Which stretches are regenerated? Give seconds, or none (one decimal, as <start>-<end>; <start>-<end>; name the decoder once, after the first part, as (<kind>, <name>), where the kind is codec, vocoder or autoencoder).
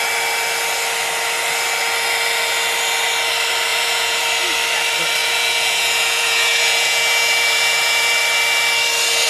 3.7-4.2 (vocoder, Vocos); 5.2-8.1